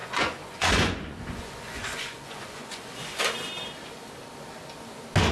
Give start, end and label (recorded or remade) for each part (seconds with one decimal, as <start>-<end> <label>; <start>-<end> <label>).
0.0-3.2 remade; 3.2-5.3 recorded